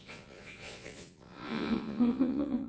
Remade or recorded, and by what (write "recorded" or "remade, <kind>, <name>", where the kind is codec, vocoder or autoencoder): remade, vocoder, Vocos